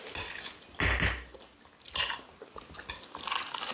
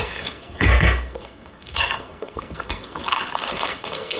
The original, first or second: first